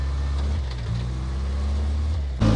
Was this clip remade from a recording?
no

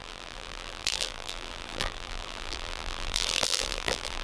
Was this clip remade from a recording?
yes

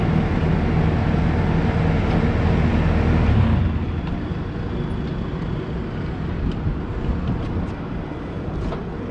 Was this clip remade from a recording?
no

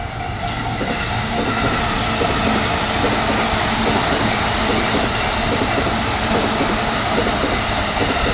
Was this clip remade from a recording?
no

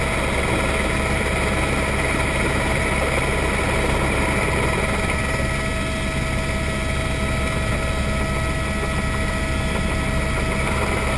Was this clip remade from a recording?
no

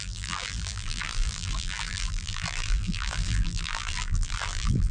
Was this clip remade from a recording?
yes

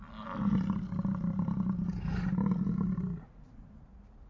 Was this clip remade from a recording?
no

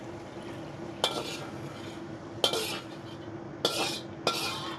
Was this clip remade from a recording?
no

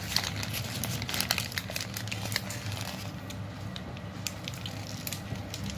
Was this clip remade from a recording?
no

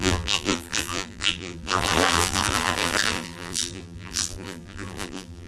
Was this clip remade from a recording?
yes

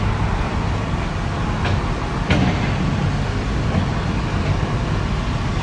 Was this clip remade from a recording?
no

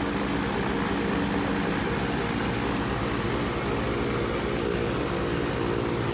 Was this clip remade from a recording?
no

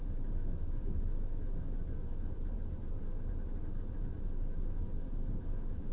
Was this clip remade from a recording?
yes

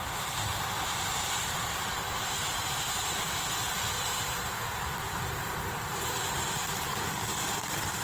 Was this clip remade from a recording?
yes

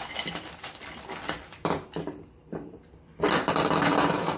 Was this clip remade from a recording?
yes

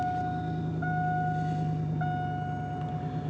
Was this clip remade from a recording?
no